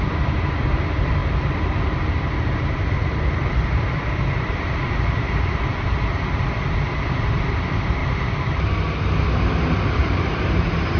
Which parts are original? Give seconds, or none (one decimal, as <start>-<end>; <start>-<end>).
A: 1.2-3.4; 8.0-9.9